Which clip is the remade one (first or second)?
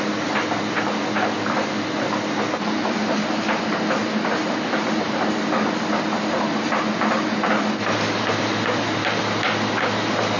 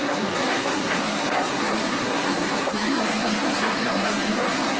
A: second